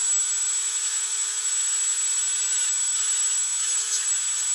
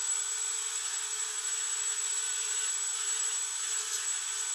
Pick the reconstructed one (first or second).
second